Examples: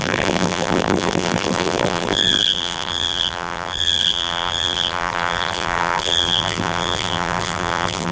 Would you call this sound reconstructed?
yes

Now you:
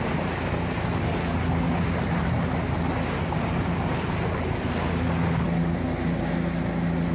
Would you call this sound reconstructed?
no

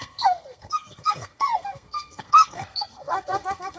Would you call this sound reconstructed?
yes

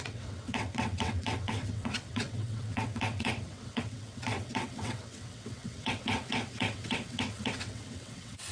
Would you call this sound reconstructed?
yes